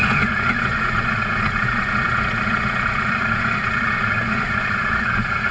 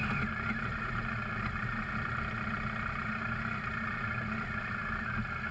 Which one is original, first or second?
second